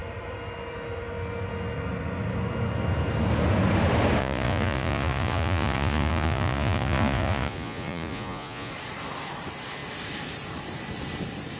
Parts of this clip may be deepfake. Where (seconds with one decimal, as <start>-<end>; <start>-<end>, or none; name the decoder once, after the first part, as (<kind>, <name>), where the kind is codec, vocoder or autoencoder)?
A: 4.2-8.7 (vocoder, Vocos)